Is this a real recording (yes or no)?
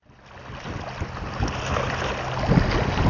yes